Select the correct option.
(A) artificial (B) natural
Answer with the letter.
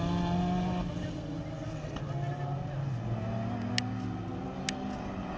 B